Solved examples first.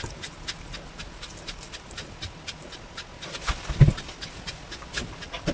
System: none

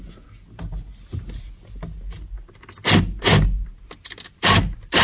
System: none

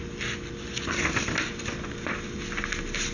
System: none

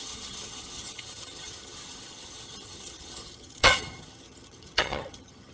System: vocoder, HiFi-GAN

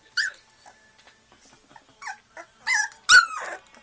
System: none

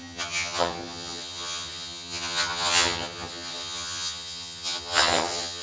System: vocoder, HiFi-GAN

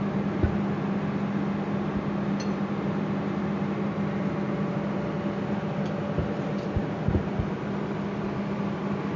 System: none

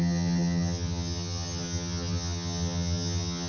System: vocoder, HiFi-GAN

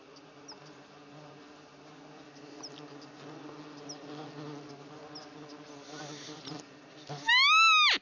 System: none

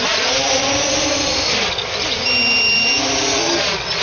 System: none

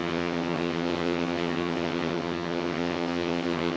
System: vocoder, HiFi-GAN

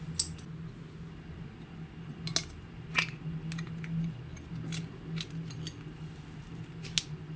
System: none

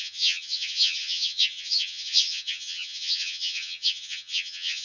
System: vocoder, HiFi-GAN